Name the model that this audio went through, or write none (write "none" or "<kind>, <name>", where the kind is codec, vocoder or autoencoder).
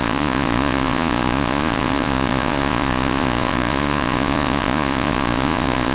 vocoder, Vocos